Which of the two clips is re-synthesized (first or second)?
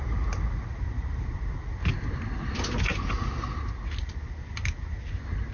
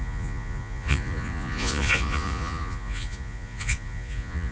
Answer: second